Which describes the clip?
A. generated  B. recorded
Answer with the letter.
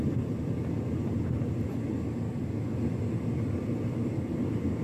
B